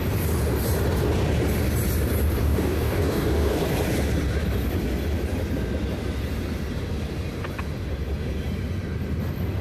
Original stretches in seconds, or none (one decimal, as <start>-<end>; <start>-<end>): 0.0-2.4; 3.6-9.6